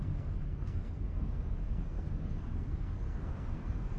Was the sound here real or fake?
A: fake